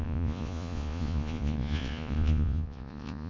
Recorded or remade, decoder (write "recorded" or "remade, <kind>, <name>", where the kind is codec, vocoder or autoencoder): remade, vocoder, Vocos